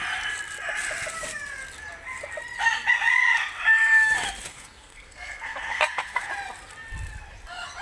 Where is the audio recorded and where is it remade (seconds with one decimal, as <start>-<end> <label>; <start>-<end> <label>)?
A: 0.0-4.5 recorded; 4.5-6.3 remade; 6.3-7.8 recorded